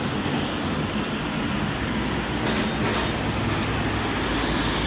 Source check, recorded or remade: recorded